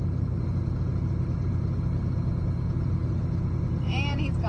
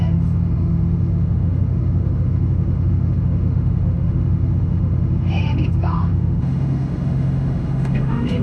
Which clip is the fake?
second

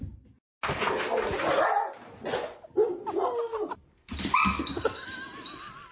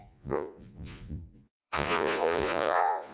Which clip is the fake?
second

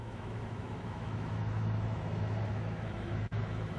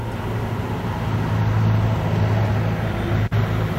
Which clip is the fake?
first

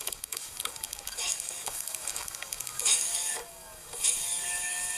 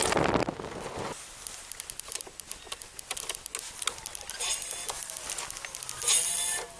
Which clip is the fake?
first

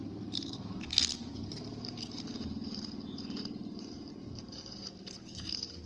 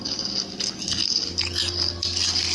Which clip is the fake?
first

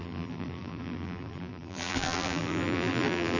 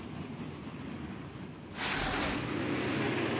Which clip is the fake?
first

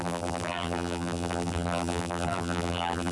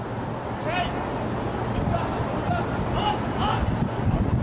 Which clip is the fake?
first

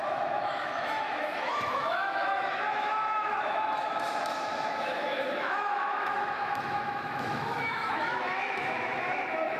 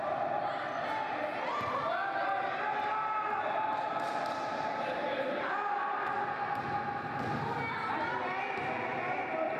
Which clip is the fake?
first